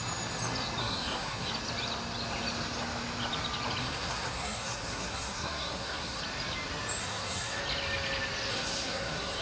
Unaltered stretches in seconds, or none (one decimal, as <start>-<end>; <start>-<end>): 0.0-0.8; 1.5-3.8; 6.2-7.0; 7.6-8.5

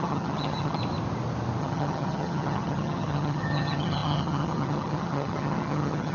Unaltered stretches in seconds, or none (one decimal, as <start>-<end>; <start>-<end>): 0.8-1.6

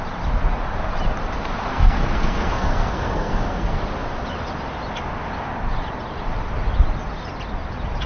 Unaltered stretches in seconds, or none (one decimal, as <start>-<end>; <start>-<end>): 0.0-1.7; 3.8-8.1

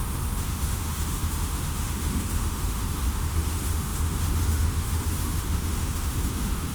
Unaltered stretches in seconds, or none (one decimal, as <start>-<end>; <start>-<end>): none

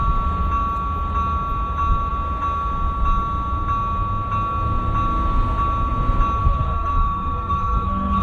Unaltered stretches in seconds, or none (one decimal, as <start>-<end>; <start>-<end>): 0.0-6.4

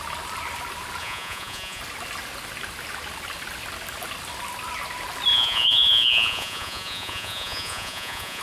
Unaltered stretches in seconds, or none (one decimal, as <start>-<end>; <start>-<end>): 0.0-1.0; 1.8-5.3